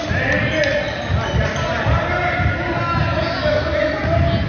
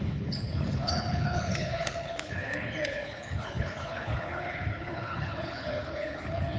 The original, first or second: first